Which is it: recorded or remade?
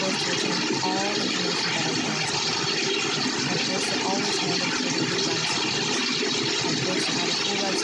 recorded